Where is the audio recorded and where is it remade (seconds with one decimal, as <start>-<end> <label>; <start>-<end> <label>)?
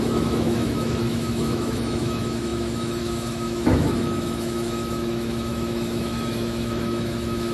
0.0-7.5 remade